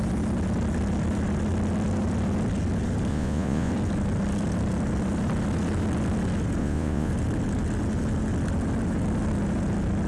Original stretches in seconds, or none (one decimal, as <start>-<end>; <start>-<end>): 0.0-3.1; 3.7-6.6; 7.1-10.1